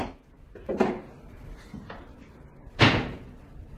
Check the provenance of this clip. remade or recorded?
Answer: recorded